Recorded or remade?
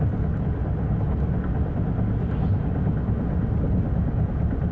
recorded